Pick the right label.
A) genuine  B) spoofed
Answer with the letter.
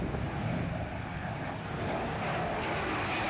A